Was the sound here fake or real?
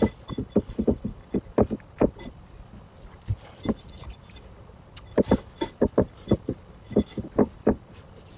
real